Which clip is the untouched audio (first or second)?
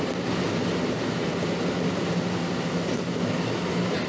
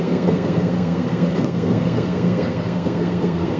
first